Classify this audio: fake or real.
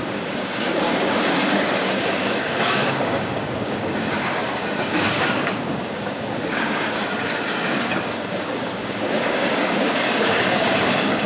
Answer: fake